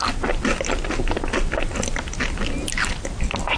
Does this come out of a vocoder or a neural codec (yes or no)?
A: no